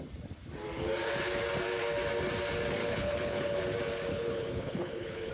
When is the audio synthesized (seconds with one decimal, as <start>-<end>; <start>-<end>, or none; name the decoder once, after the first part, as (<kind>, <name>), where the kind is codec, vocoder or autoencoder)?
2.8-3.6 (codec, HILCodec); 4.1-5.3